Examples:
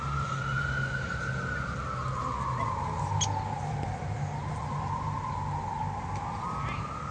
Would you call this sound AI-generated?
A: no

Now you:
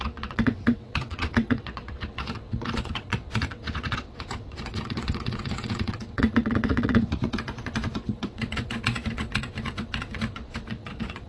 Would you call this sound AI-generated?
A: yes